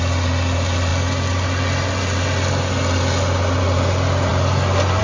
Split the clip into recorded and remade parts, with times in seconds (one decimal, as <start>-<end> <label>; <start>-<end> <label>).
0.0-5.0 recorded